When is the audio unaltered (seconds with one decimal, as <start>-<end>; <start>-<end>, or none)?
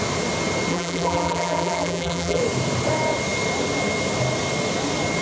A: 0.0-0.7; 2.4-5.2